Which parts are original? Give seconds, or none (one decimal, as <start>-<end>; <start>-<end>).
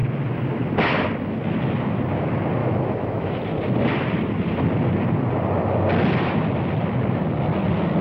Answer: 0.0-2.6; 3.4-8.0